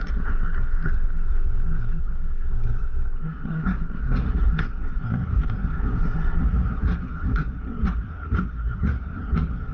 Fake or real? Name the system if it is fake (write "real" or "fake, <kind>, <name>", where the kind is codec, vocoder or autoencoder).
fake, codec, SNAC